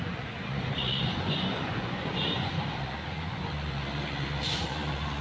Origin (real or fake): fake